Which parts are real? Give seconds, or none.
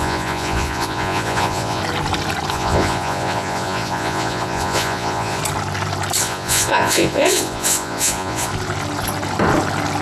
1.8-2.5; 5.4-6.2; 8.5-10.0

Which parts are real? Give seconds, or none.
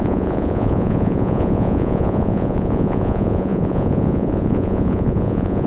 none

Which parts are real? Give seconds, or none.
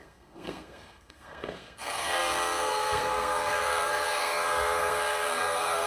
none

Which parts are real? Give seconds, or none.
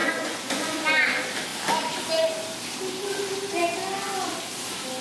0.8-5.0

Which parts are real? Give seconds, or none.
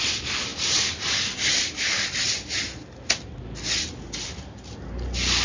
0.0-5.4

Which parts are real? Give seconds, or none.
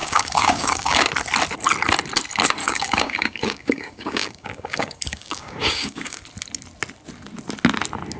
1.1-2.6; 6.2-8.2